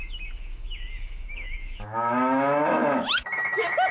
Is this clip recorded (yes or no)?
no